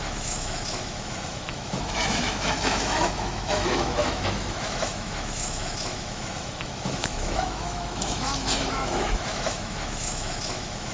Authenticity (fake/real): fake